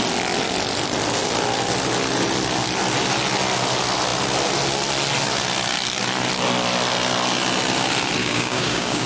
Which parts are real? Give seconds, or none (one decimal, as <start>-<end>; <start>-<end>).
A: 0.0-8.2